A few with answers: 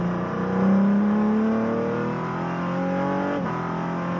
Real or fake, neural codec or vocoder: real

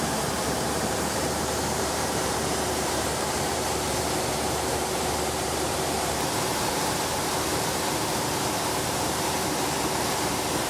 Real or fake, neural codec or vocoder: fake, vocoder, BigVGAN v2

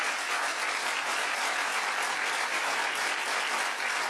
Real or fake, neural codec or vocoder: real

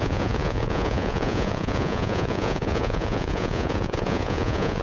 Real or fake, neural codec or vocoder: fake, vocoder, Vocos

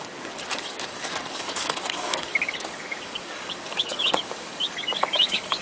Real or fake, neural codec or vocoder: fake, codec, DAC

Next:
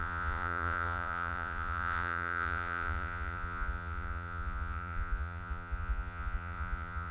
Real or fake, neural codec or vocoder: fake, vocoder, Vocos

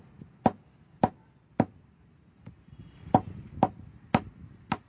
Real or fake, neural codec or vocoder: real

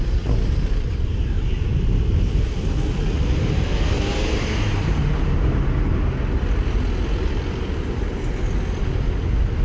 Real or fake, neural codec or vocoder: real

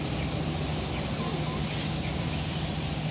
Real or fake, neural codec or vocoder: real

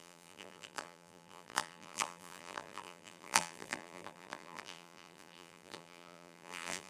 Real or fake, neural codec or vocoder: fake, vocoder, BigVGAN v2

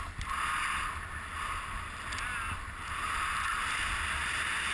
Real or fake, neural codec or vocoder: real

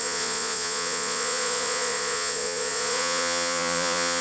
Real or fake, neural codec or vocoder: fake, vocoder, Vocos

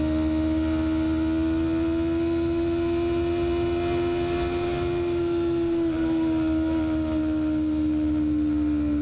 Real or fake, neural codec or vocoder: real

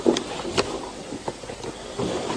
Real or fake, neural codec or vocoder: real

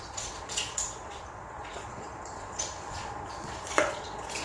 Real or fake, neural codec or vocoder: fake, vocoder, Vocos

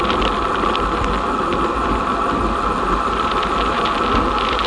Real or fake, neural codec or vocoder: real